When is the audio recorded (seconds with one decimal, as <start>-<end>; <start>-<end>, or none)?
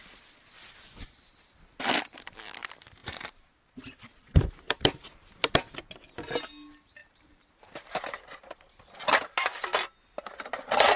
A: 0.0-3.0; 5.3-7.0; 8.0-11.0